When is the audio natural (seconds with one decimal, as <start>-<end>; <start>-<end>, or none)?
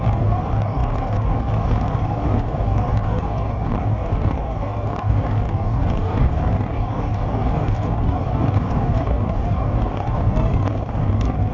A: none